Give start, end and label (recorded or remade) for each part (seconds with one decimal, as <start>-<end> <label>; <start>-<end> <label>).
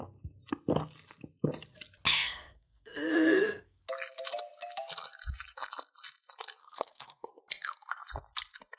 0.0-2.1 recorded; 2.1-3.8 remade; 3.8-6.6 recorded; 6.6-7.4 remade; 7.4-8.8 recorded